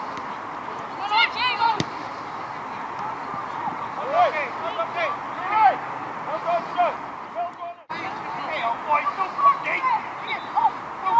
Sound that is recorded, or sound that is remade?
recorded